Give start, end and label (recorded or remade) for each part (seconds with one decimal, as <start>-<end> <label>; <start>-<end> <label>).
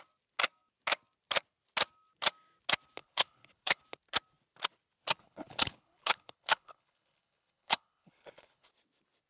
0.0-3.0 recorded; 3.0-3.8 remade; 3.8-5.2 recorded; 5.2-8.7 remade; 8.7-9.3 recorded